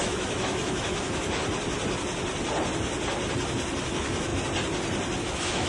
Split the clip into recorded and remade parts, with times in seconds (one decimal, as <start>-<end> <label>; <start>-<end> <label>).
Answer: 0.0-1.4 remade; 1.4-3.8 recorded; 3.8-4.3 remade; 4.3-5.2 recorded; 5.2-5.7 remade